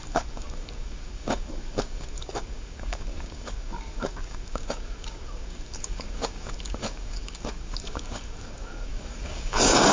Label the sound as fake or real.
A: fake